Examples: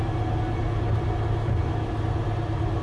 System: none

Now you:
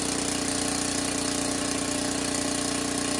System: none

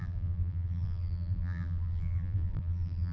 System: vocoder, BigVGAN v2